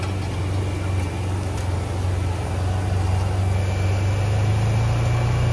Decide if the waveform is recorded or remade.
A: recorded